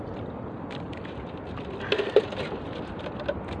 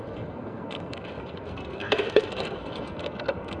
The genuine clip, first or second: first